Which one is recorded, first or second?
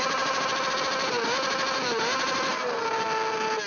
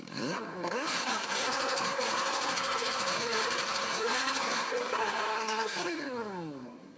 first